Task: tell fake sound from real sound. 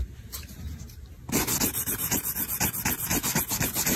real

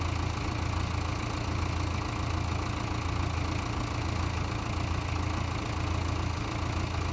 real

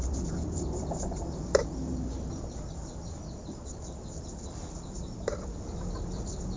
real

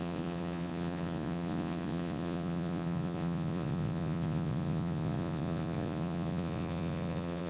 fake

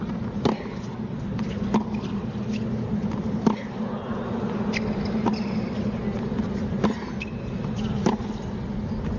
real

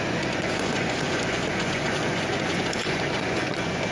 fake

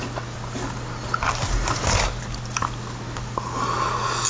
real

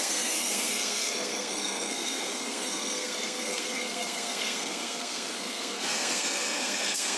fake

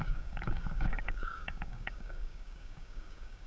fake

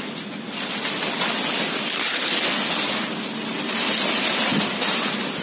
real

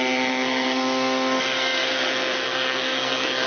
fake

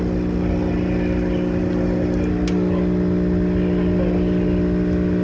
real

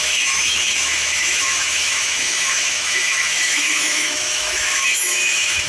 fake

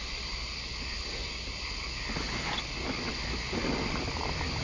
real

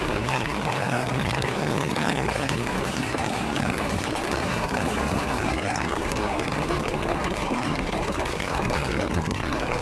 fake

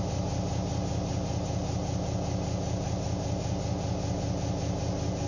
real